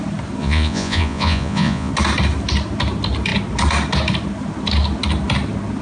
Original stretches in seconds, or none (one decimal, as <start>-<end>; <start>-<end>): 0.0-0.4; 1.9-5.8